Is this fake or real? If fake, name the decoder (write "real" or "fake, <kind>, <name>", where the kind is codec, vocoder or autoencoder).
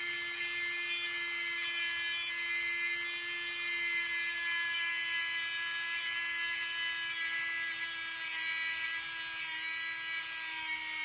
real